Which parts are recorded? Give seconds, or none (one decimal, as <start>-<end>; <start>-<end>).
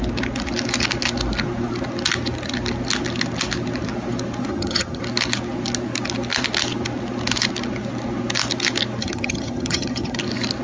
0.0-4.5; 5.0-9.0; 10.2-10.6